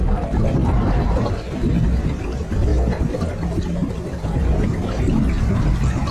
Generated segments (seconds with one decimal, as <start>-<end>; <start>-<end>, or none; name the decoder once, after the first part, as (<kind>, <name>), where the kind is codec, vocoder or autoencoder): 0.6-1.3 (vocoder, BigVGAN v2)

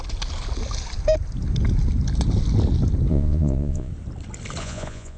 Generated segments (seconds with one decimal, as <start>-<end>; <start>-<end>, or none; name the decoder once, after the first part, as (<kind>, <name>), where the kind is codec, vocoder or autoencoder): 3.1-3.9 (vocoder, Vocos); 4.6-5.2

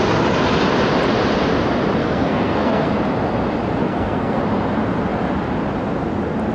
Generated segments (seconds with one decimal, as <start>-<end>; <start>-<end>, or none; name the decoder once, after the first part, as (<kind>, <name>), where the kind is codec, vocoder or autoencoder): 2.0-2.9 (codec, SNAC); 3.8-4.4